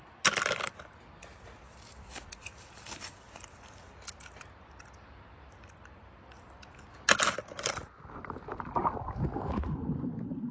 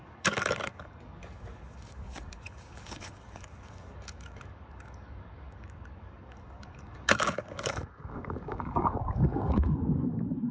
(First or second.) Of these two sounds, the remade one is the second